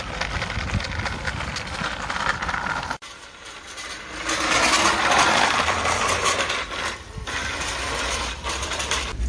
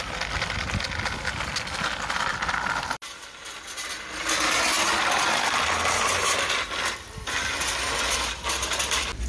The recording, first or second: second